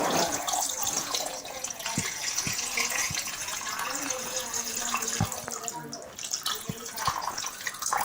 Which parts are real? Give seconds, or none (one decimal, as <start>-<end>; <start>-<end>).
5.1-6.5